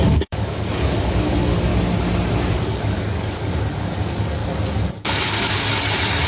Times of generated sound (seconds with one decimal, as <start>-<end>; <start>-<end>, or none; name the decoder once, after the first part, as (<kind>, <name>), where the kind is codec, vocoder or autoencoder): 0.0-1.7 (codec, DAC); 2.5-5.7